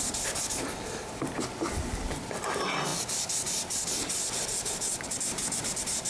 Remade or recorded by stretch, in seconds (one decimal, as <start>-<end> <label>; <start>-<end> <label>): 0.0-6.1 recorded